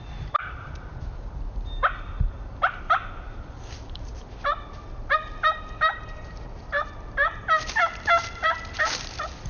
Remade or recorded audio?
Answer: remade